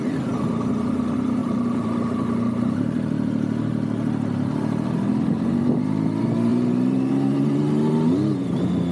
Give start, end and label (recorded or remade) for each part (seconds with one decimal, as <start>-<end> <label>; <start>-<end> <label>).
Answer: 0.0-1.4 recorded; 1.4-5.2 remade; 5.2-6.5 recorded; 6.5-7.1 remade; 7.1-8.9 recorded